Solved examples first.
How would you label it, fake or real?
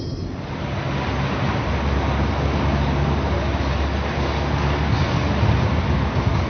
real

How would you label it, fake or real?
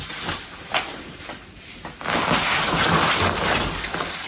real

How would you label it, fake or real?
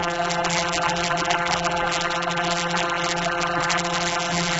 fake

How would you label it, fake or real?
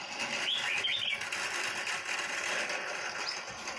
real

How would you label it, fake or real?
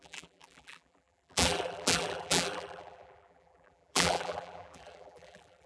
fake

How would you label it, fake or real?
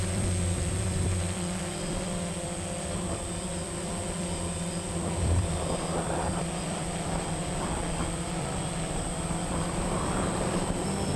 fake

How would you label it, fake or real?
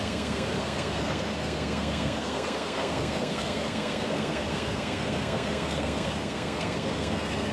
fake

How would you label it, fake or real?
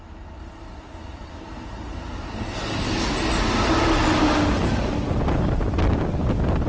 real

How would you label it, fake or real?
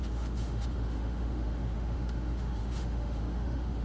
fake